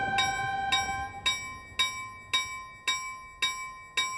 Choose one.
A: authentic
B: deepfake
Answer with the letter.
A